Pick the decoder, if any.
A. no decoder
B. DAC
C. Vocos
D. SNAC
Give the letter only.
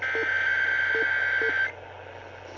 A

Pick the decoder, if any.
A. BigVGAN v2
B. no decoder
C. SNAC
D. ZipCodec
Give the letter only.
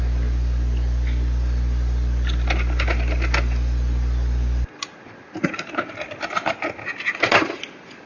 B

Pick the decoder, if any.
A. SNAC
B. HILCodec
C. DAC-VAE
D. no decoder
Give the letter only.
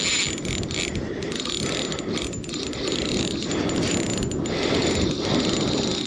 D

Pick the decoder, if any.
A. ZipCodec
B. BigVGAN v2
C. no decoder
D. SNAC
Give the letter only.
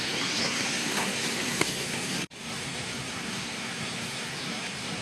D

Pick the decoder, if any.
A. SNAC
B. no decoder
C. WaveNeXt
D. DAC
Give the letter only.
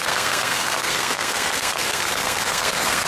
A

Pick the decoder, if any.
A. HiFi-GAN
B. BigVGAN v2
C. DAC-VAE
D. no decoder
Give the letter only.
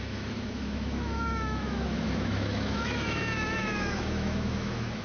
C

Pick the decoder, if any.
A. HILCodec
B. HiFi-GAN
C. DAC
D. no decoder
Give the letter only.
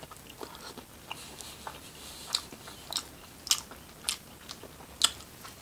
D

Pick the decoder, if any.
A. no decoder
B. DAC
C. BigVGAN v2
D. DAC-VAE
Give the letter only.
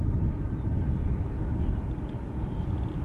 A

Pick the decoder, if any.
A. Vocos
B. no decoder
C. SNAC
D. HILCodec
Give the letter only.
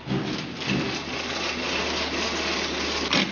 B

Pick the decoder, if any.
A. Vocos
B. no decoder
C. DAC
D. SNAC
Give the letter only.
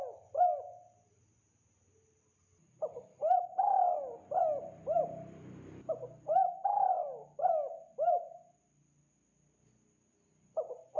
B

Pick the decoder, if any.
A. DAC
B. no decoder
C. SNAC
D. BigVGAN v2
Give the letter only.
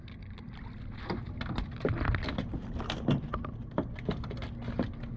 B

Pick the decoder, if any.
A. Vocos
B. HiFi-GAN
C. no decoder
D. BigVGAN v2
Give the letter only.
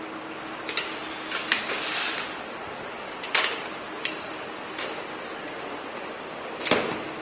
C